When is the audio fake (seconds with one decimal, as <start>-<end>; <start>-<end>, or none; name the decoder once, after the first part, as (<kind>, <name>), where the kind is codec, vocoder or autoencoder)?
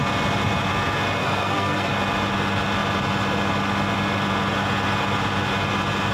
1.2-1.9 (codec, SNAC)